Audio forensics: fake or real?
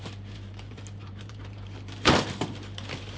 fake